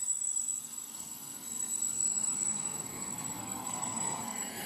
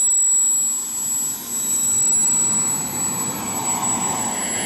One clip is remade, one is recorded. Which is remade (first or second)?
first